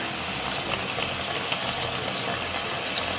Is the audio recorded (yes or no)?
yes